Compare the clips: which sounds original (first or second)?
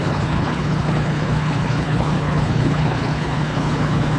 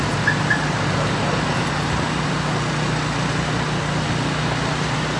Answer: second